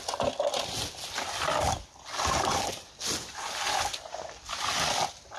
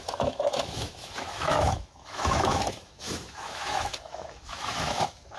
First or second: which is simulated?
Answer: second